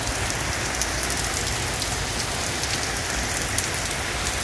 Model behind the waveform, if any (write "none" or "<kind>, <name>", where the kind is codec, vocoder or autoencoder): none